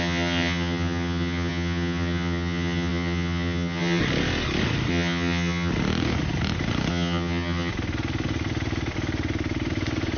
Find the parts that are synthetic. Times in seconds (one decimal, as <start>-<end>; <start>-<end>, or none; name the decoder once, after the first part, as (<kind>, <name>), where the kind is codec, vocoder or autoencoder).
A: 0.0-4.0 (vocoder, HiFi-GAN); 4.9-5.7; 6.9-7.7